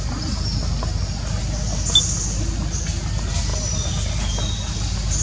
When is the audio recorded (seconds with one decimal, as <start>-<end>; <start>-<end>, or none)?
0.0-5.2